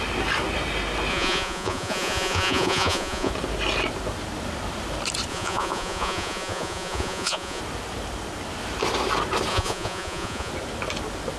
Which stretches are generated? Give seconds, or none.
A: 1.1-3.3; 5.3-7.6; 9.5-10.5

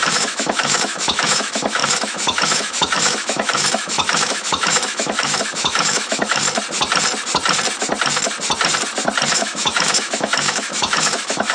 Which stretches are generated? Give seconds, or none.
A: 0.0-6.4; 9.3-11.5

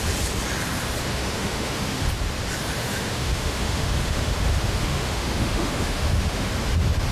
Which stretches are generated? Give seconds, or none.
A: 1.1-2.1; 2.8-6.5

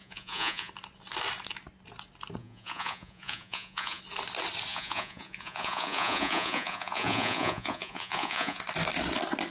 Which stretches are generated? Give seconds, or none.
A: 0.0-0.7; 2.4-4.0; 4.7-8.6